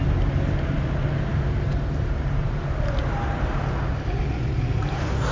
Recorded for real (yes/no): yes